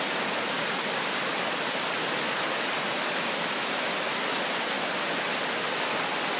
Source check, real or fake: real